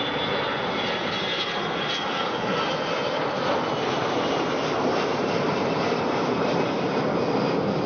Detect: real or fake fake